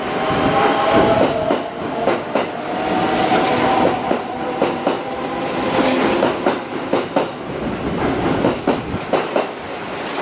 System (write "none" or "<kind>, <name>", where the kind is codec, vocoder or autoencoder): none